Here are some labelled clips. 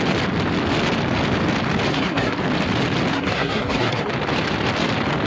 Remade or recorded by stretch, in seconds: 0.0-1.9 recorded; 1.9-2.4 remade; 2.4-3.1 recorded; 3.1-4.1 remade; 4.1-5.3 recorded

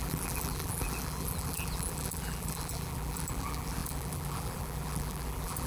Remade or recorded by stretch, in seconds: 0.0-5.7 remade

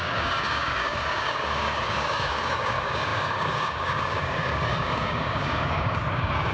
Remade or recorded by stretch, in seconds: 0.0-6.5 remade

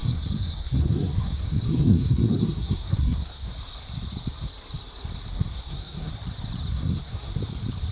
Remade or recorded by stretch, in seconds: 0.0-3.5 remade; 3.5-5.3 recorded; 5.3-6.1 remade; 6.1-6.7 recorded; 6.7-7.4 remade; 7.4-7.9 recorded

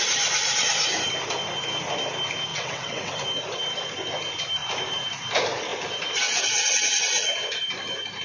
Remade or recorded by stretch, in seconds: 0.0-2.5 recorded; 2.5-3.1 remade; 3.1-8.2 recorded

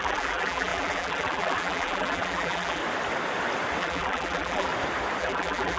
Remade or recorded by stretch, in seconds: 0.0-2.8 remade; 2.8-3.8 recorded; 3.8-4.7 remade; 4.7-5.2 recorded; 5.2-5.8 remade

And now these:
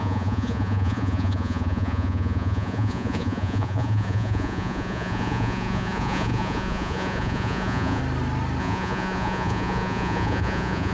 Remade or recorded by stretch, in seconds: 0.0-8.0 remade; 8.0-8.6 recorded; 8.6-10.9 remade

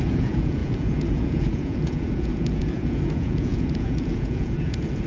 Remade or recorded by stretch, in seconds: 0.0-5.1 remade